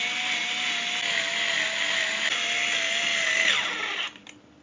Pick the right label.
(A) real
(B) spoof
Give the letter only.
A